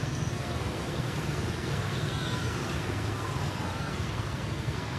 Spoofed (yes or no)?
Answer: yes